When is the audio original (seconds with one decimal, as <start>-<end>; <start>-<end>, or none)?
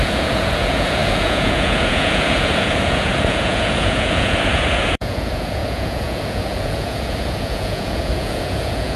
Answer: none